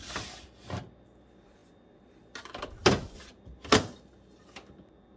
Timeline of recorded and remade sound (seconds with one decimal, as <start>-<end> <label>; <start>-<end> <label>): 0.0-5.2 recorded